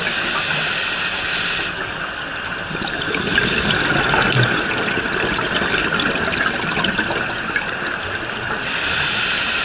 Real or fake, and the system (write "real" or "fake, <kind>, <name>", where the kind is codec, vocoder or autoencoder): real